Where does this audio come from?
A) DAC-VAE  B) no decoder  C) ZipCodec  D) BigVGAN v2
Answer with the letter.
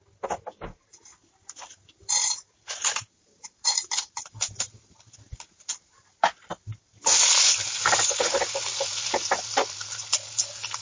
B